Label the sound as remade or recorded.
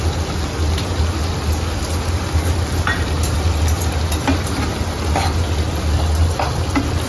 recorded